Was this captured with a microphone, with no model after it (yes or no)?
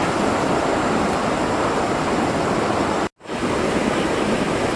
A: yes